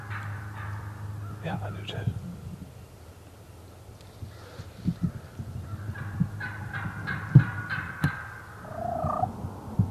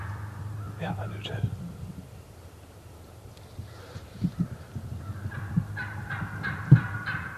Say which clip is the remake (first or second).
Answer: second